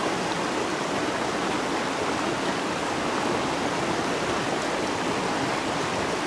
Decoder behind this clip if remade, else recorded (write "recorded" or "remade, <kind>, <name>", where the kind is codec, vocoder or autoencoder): recorded